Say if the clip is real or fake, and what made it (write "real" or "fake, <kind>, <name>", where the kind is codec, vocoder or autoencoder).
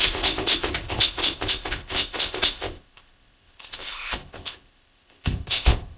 fake, codec, ZipCodec